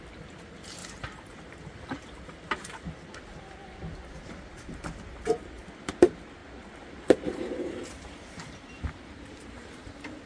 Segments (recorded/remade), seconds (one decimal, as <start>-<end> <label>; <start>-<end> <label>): 0.0-0.8 recorded; 0.8-2.2 remade; 2.2-6.4 recorded; 6.4-9.9 remade; 9.9-10.3 recorded